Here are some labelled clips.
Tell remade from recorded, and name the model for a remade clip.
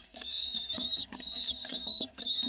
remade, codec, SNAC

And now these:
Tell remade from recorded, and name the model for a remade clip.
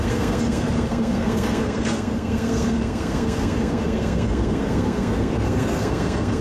remade, codec, SNAC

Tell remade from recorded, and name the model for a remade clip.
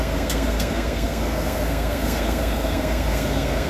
remade, codec, SNAC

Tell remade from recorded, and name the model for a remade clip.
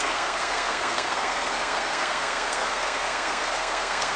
remade, codec, SNAC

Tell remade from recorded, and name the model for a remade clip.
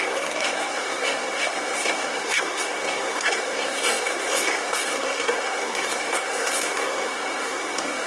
remade, codec, SNAC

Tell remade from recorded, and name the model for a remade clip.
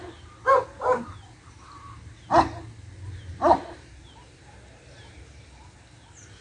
recorded